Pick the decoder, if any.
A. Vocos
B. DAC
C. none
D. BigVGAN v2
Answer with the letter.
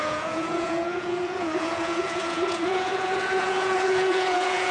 A